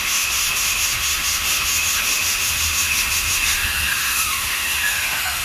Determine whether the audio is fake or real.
fake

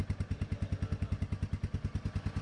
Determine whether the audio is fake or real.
real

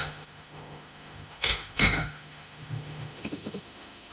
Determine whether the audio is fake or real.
fake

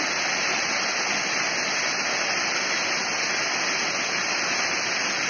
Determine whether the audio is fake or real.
real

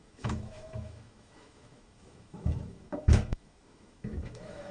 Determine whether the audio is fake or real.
fake